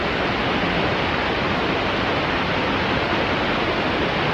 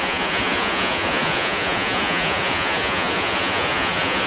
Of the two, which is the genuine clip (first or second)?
first